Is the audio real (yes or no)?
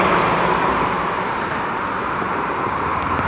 no